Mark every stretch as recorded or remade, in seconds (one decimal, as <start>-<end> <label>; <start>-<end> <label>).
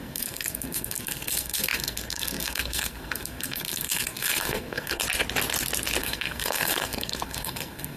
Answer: 0.0-5.0 remade; 5.0-6.0 recorded; 6.0-8.0 remade